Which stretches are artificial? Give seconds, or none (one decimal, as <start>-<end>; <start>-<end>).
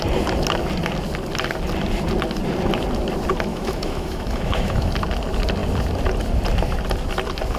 3.5-4.9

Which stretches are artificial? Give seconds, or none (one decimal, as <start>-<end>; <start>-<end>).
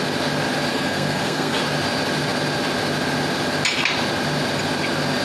0.7-1.6